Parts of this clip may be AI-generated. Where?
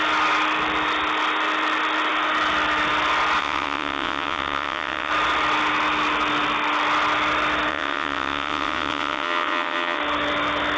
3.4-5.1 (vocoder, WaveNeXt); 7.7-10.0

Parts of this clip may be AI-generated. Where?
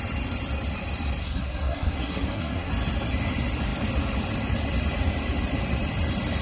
1.2-2.7 (codec, SNAC)